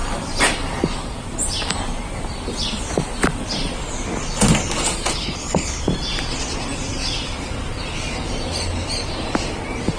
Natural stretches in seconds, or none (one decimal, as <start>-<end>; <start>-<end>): 0.0-5.1; 5.8-10.0